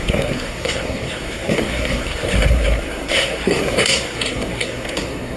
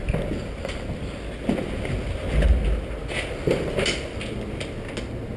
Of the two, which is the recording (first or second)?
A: second